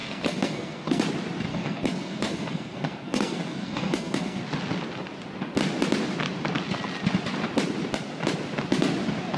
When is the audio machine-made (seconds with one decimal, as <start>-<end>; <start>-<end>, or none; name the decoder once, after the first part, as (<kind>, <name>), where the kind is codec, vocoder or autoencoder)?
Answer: 0.0-1.0 (codec, SNAC); 1.5-4.4